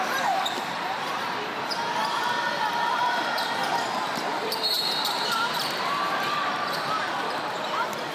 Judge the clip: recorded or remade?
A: remade